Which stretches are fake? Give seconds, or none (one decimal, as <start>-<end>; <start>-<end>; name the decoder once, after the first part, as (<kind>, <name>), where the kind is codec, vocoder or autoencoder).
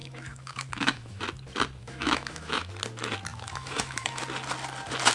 0.0-1.2 (autoencoder, DAC-VAE); 1.8-2.7; 3.3-4.2